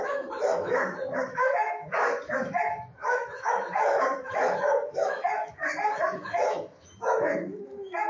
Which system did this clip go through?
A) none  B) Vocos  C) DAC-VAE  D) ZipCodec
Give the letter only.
C